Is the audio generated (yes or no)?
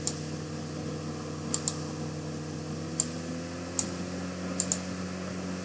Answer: no